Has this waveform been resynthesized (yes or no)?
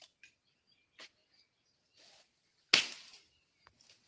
no